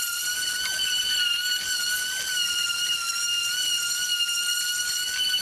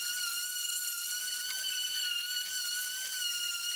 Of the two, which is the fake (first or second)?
second